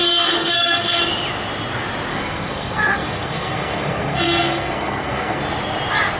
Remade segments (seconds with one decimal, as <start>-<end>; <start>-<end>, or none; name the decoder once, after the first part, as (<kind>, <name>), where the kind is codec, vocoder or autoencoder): 0.0-1.0 (codec, SNAC); 2.1-5.4